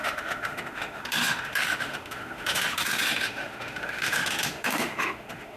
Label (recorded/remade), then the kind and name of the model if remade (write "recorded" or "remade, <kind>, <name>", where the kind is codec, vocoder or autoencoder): remade, autoencoder, DAC-VAE